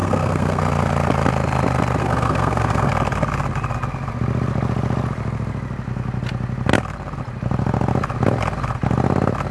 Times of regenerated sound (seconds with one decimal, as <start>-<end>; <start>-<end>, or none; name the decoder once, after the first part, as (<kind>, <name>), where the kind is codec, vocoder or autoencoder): 0.0-0.6 (codec, SNAC); 2.0-2.9